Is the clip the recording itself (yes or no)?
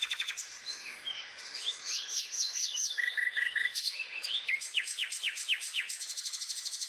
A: no